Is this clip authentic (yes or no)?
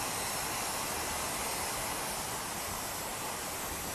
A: yes